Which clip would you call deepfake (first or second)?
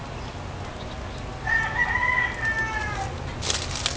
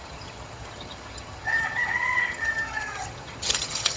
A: second